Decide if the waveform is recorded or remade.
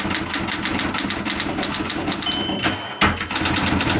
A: recorded